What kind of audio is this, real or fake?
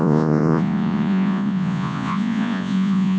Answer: fake